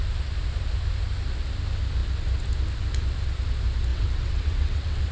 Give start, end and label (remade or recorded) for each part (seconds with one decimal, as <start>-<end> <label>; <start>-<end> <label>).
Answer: 0.0-3.9 recorded; 3.9-5.1 remade